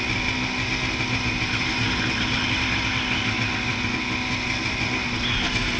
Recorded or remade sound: recorded